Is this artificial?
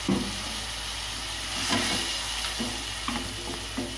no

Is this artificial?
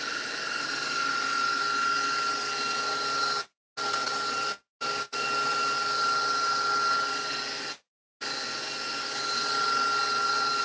no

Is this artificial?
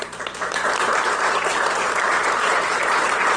yes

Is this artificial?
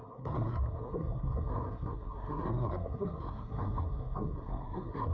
yes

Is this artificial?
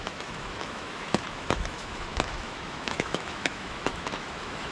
yes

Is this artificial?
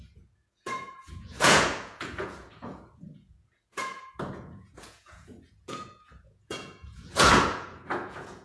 yes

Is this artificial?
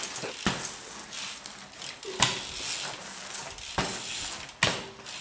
no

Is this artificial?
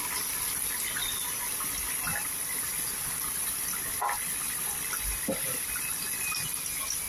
no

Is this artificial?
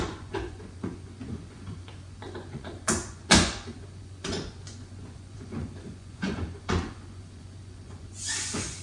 yes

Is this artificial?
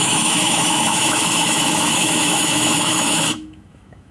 yes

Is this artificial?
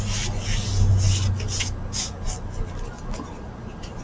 no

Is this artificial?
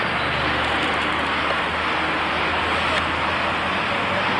no